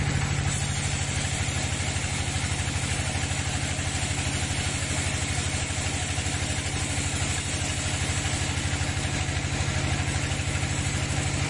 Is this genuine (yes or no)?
yes